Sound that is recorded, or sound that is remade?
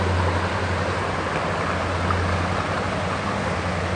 recorded